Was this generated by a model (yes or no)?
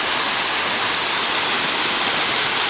no